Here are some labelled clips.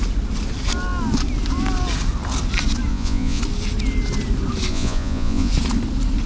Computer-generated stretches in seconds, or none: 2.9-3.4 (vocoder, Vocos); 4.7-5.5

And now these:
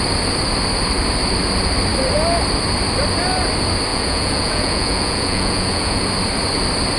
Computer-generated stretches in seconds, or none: 3.9-6.0 (vocoder, Vocos)

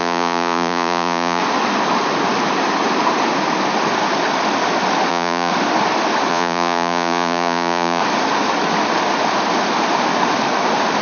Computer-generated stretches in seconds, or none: 0.0-1.4 (vocoder, Vocos); 5.1-5.5; 6.3-8.0

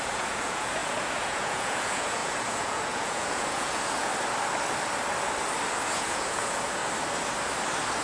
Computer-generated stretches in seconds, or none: 0.0-4.1 (vocoder, Vocos); 5.8-6.8

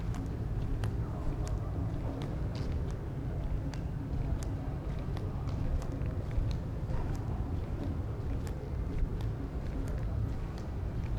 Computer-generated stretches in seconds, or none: none

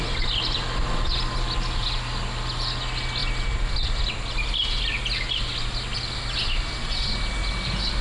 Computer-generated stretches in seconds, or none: none

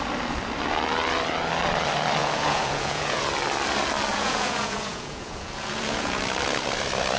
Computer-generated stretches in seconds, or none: 2.2-3.3 (vocoder, Vocos); 4.1-6.2